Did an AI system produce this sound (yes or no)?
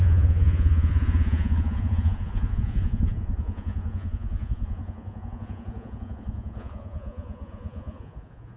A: yes